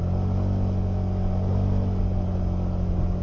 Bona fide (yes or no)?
yes